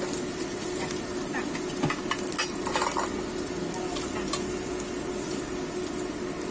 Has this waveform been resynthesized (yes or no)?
no